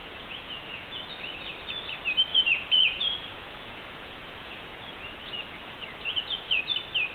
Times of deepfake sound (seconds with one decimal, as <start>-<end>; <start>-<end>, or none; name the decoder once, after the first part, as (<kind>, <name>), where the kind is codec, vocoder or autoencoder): 0.0-1.0 (vocoder, Vocos); 2.3-6.6